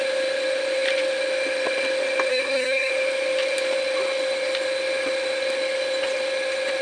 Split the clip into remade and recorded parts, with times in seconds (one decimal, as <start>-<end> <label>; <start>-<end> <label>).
0.0-2.3 recorded; 2.3-2.9 remade; 2.9-6.8 recorded